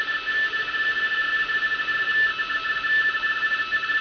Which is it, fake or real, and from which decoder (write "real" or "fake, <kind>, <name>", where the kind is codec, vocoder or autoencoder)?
real